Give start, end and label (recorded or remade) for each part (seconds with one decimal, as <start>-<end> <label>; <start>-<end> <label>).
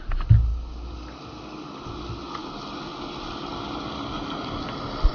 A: 0.0-5.1 recorded